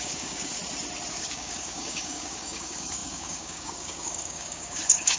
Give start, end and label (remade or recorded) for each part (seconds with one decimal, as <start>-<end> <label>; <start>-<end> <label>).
0.0-0.6 remade; 0.6-1.1 recorded; 1.1-5.2 remade